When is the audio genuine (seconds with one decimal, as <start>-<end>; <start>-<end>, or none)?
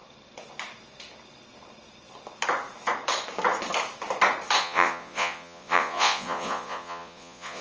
0.0-4.6